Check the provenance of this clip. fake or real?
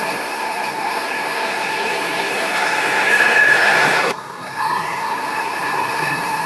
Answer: fake